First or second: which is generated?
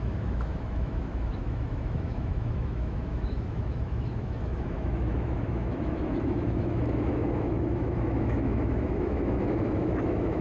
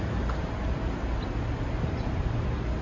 first